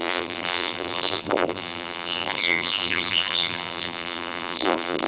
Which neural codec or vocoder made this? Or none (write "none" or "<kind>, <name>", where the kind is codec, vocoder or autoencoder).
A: vocoder, BigVGAN v2